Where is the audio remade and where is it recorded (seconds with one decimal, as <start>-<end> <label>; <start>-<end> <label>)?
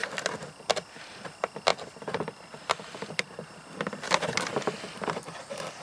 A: 0.0-5.8 recorded